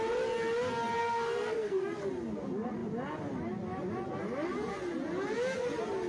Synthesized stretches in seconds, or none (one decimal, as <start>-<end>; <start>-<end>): 1.0-2.1